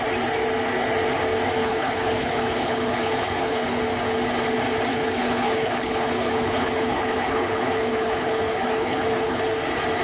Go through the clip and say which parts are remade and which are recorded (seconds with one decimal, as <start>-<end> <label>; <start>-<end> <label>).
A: 0.0-1.6 recorded; 1.6-3.8 remade; 3.8-4.9 recorded; 4.9-9.4 remade; 9.4-10.0 recorded